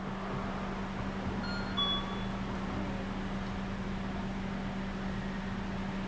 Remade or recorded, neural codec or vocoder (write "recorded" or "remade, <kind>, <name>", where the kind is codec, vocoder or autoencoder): recorded